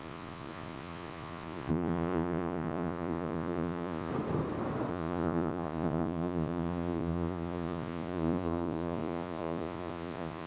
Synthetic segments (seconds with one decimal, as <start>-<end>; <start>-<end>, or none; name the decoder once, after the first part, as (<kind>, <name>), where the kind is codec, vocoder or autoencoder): 0.0-4.1 (vocoder, Vocos); 4.9-10.5

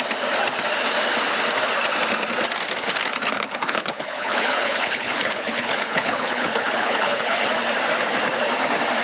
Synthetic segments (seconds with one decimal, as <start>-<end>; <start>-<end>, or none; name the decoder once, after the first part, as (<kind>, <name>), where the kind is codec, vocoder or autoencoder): 3.3-7.5 (codec, HILCodec)

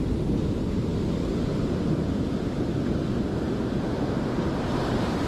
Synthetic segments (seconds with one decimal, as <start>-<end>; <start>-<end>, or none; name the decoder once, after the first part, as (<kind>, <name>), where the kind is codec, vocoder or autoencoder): none

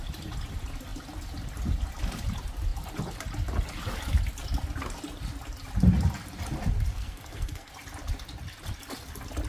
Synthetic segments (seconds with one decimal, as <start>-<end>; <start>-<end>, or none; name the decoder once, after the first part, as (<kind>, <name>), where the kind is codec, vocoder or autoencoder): 6.9-7.7 (codec, SNAC)

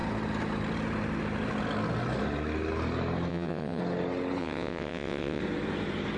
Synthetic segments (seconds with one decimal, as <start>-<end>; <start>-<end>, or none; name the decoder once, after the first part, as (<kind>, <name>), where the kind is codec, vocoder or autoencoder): 3.3-3.8 (vocoder, WaveNeXt); 4.4-5.4

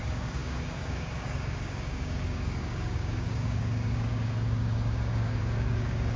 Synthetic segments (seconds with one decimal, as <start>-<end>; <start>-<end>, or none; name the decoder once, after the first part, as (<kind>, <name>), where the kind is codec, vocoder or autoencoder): 0.0-6.2 (codec, DAC)